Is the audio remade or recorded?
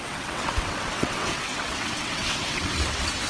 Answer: remade